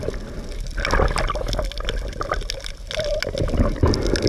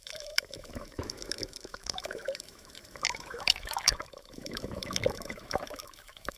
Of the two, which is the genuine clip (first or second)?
first